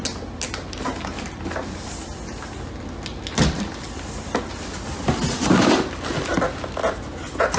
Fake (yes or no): no